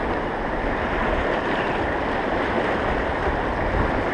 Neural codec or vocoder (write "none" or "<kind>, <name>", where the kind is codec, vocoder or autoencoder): none